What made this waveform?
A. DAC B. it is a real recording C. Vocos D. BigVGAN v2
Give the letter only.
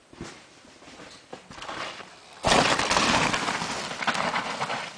B